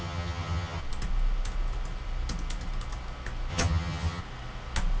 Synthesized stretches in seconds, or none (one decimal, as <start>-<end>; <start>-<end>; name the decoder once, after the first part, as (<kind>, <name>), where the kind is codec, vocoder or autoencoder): 0.0-0.8 (vocoder, HiFi-GAN); 3.5-4.2